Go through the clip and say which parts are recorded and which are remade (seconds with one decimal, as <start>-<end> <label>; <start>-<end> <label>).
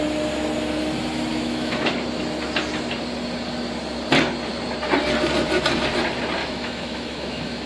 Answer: 0.0-1.3 recorded; 1.3-1.9 remade; 1.9-6.4 recorded; 6.4-7.7 remade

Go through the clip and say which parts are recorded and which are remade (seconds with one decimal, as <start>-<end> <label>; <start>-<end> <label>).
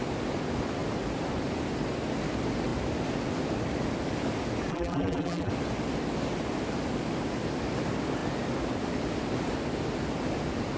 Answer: 0.0-4.7 recorded; 4.7-5.5 remade; 5.5-10.8 recorded